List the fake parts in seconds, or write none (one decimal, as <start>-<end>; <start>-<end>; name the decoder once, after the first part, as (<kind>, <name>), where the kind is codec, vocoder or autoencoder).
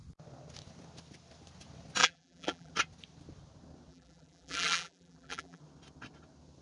2.0-2.7 (vocoder, BigVGAN v2); 3.9-5.6